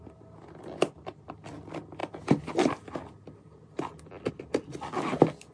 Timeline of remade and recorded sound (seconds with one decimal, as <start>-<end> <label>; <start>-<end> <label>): 0.0-5.5 recorded